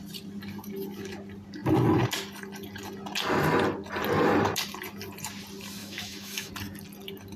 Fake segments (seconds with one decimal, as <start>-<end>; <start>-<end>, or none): 5.8-6.5